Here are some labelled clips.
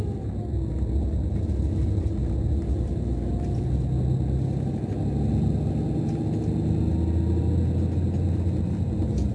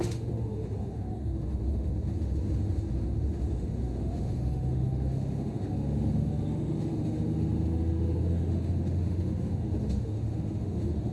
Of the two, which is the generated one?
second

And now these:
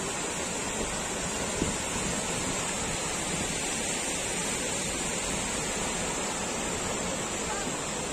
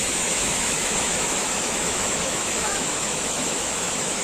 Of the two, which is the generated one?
second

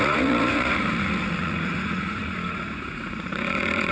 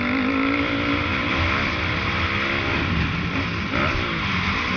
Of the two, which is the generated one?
first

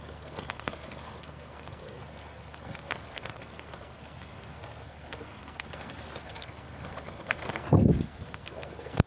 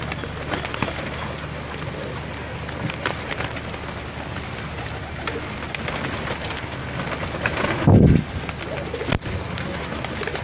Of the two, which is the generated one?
first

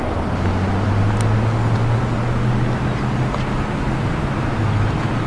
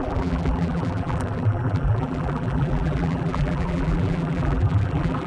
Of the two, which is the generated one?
second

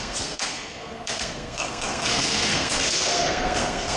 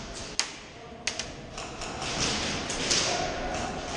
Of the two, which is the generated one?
first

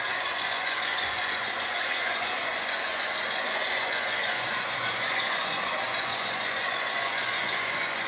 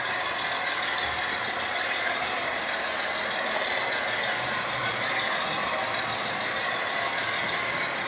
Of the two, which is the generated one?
first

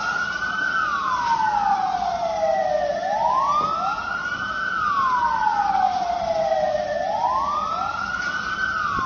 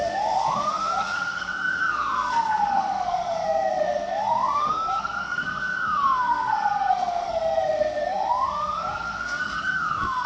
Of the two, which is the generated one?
second